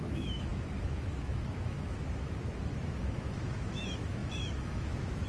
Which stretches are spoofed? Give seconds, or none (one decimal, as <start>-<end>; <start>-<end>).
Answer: 0.0-5.3